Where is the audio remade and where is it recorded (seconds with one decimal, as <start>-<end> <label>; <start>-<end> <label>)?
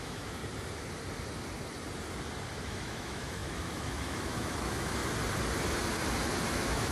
0.0-0.4 remade; 0.4-2.6 recorded; 2.6-5.0 remade; 5.0-6.5 recorded; 6.5-6.9 remade